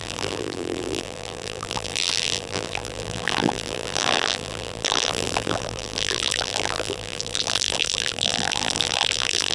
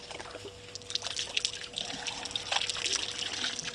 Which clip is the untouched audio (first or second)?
second